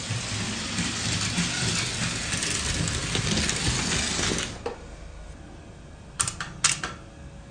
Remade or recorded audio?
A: recorded